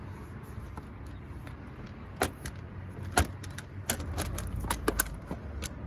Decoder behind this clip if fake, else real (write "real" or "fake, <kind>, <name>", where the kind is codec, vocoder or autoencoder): real